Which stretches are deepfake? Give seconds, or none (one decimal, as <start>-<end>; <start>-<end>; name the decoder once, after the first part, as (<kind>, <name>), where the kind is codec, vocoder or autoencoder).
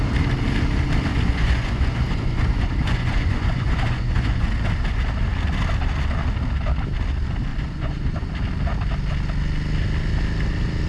1.1-4.5 (vocoder, Vocos); 7.5-8.3